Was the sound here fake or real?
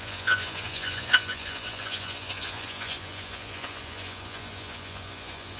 fake